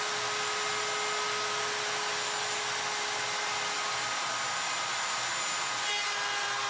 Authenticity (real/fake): real